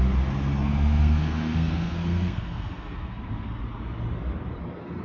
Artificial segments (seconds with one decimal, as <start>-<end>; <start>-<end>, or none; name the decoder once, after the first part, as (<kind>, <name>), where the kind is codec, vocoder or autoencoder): 0.6-3.6 (codec, SNAC)